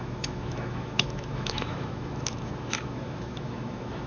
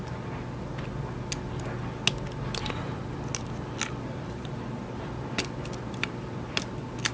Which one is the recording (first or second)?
second